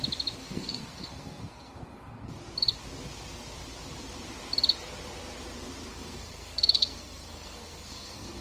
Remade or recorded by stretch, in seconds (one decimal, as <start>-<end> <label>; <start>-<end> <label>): 0.0-0.4 recorded; 0.4-2.3 remade; 2.3-5.9 recorded; 5.9-8.4 remade